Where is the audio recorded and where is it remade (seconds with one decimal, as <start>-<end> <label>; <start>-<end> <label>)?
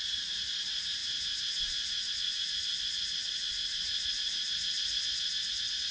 0.0-1.0 remade; 1.0-2.1 recorded; 2.1-5.9 remade